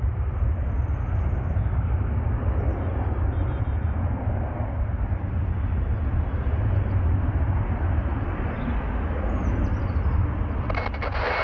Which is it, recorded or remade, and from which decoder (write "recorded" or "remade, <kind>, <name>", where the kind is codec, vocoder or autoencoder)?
recorded